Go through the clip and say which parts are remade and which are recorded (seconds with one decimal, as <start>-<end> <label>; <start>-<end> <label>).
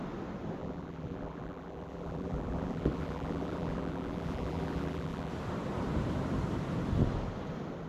0.0-0.6 recorded; 0.6-5.3 remade; 5.3-7.9 recorded